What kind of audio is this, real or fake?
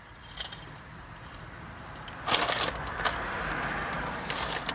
real